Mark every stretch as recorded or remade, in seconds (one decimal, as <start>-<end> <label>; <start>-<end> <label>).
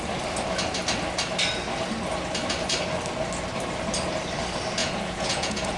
0.0-4.8 recorded; 4.8-5.8 remade